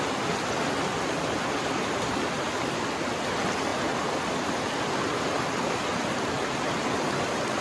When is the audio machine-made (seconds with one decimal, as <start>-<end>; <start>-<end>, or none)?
none